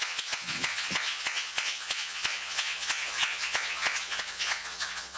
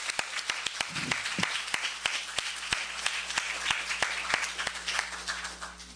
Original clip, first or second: second